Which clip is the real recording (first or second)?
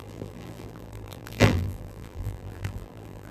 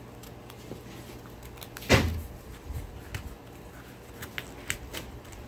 second